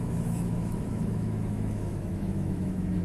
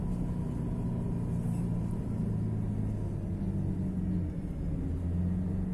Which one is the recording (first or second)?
second